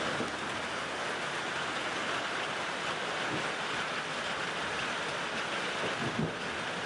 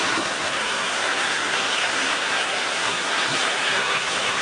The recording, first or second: first